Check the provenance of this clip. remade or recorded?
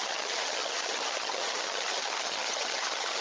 remade